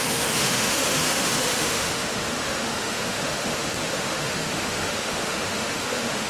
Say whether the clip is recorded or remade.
remade